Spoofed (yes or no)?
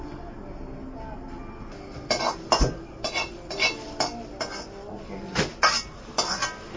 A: no